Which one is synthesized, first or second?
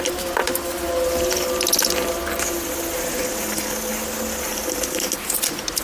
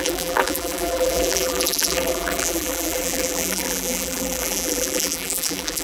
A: second